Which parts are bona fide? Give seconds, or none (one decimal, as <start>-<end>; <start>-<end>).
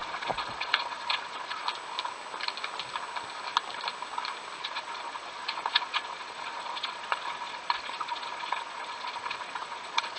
1.6-4.6